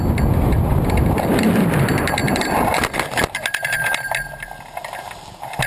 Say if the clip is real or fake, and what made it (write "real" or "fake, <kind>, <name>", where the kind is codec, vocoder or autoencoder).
real